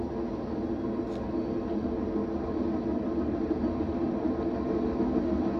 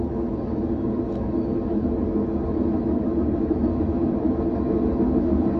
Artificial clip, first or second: second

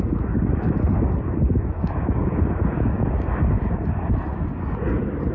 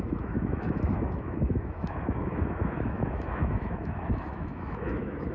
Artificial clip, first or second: second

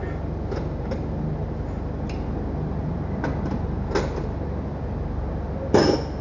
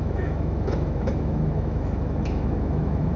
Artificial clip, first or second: second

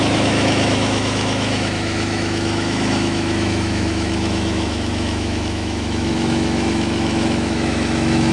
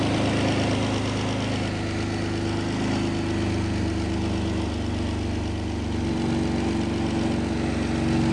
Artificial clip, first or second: first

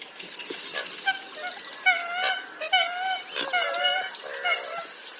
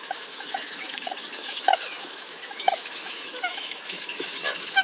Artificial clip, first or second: second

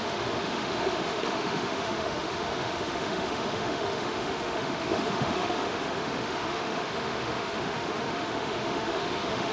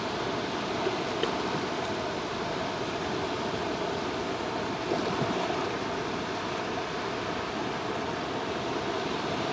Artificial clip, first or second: first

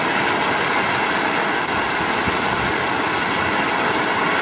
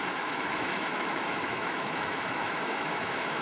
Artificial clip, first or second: second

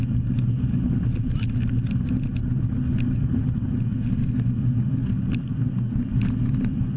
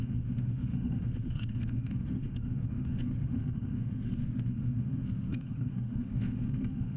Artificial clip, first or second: second